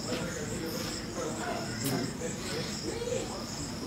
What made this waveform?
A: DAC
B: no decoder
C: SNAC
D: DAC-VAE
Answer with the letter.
B